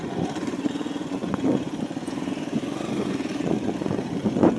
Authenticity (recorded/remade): remade